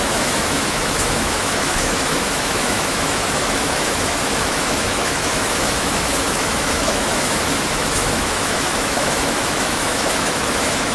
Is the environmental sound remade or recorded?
remade